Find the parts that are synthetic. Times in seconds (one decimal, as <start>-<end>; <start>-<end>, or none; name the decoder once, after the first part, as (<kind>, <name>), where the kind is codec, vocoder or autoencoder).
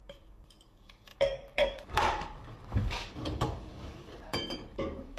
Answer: 0.0-5.2 (codec, DAC)